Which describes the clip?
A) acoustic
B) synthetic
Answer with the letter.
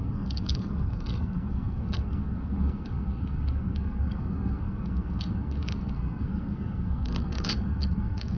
B